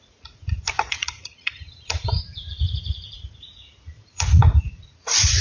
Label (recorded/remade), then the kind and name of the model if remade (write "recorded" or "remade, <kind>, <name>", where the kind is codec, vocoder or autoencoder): remade, vocoder, Vocos